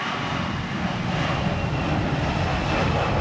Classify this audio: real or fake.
real